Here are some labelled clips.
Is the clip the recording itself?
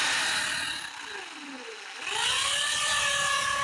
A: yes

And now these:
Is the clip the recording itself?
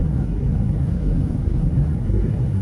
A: no